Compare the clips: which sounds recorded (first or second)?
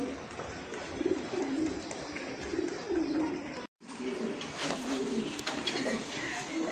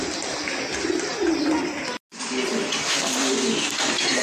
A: second